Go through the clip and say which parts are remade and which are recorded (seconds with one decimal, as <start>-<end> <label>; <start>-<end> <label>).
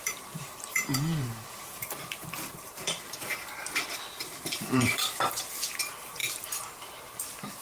0.0-7.6 remade